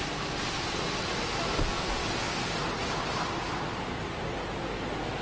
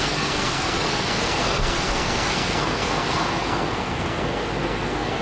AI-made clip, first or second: second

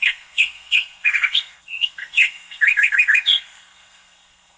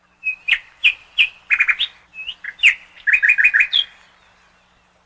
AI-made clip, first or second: first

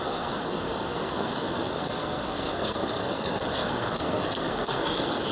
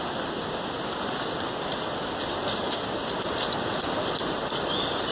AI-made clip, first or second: first